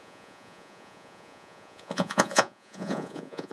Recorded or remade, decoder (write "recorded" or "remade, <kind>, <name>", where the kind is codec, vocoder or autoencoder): remade, vocoder, Vocos